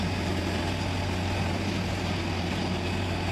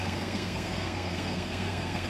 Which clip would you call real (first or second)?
first